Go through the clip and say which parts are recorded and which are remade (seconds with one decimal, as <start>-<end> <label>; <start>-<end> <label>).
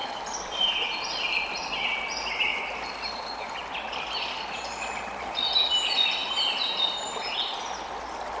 0.0-1.4 remade; 1.4-2.5 recorded; 2.5-5.3 remade; 5.3-6.2 recorded; 6.2-7.6 remade; 7.6-8.4 recorded